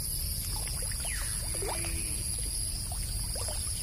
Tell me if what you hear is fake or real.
real